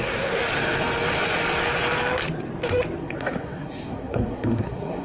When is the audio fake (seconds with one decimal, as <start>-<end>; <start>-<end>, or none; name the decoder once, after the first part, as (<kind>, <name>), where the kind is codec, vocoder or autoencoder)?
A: 0.0-0.4 (codec, SNAC); 3.0-5.0